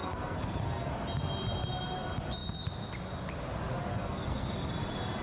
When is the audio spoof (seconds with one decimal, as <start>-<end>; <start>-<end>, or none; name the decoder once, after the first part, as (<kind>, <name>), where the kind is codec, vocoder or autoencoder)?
0.0-0.9 (codec, SNAC); 3.9-4.7